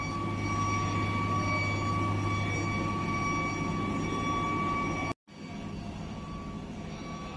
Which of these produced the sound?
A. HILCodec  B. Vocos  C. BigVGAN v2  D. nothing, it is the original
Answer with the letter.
D